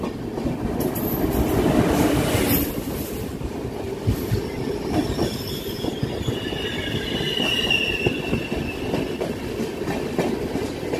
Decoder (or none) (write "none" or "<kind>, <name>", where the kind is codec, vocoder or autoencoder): none